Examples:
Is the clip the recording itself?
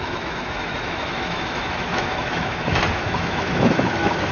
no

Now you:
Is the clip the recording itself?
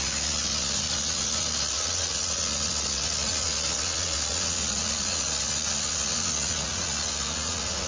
no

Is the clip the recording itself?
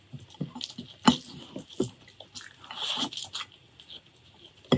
yes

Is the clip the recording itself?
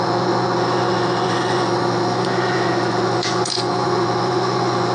no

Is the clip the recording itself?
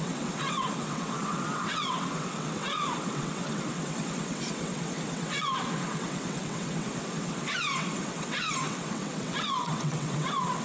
no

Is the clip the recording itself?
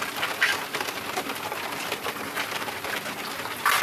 no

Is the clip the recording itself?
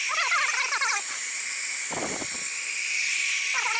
yes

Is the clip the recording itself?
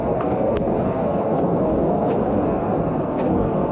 no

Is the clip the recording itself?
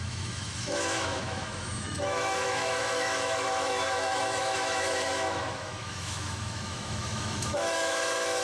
no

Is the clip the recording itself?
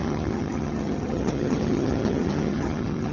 no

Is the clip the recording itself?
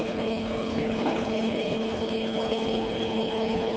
no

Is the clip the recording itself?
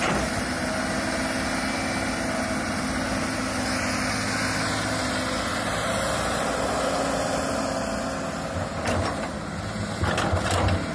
yes